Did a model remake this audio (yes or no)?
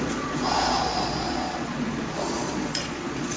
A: yes